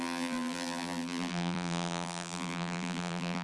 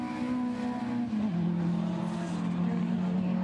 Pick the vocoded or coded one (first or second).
first